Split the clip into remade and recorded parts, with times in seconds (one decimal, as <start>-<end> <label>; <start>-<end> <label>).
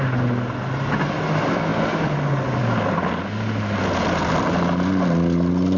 0.0-5.8 recorded